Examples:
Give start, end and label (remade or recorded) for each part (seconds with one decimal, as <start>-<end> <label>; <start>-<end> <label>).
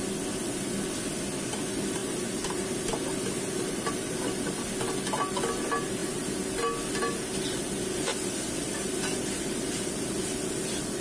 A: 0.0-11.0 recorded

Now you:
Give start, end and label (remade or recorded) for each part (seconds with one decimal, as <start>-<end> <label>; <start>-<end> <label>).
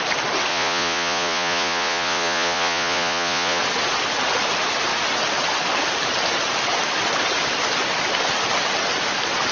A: 0.0-0.5 recorded; 0.5-3.6 remade; 3.6-9.5 recorded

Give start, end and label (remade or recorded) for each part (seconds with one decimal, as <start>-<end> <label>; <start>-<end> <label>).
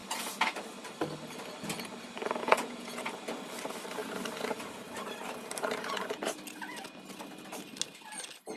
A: 0.0-2.4 recorded; 2.4-3.1 remade; 3.1-8.6 recorded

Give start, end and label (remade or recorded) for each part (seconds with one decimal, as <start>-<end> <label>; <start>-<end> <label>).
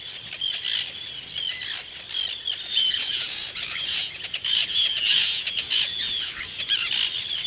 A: 0.0-2.7 recorded; 2.7-6.9 remade; 6.9-7.5 recorded